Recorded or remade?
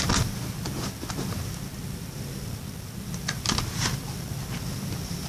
recorded